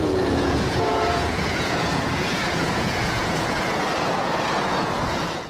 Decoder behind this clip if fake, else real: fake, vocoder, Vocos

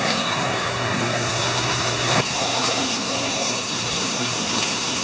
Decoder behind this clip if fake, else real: fake, codec, SNAC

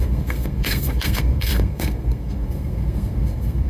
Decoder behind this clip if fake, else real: fake, codec, SNAC